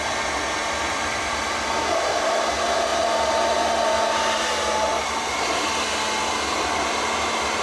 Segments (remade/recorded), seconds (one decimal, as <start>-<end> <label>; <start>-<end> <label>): 0.0-0.6 recorded; 0.6-2.3 remade; 2.3-7.6 recorded